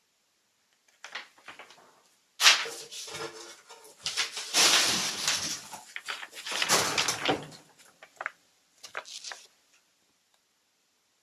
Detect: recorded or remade recorded